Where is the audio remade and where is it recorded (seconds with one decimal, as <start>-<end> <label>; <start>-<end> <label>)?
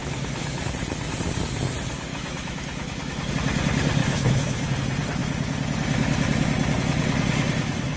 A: 0.0-0.6 remade; 0.6-2.1 recorded; 2.1-3.3 remade; 3.3-4.0 recorded; 4.0-4.8 remade; 4.8-8.0 recorded